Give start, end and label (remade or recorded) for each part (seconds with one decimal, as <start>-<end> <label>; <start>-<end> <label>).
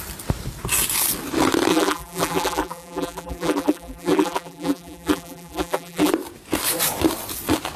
0.0-1.7 recorded; 1.7-6.1 remade; 6.1-7.8 recorded